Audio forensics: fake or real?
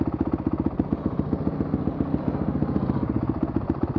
real